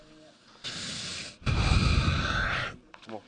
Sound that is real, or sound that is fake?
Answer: real